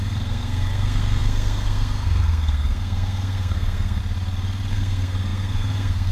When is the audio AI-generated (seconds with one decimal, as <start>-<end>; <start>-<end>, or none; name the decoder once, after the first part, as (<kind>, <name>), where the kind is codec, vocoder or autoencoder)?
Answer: 0.0-4.0 (codec, SNAC); 4.7-6.1